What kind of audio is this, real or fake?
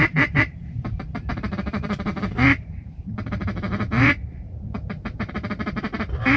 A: fake